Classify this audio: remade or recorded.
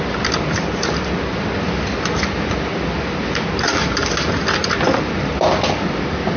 recorded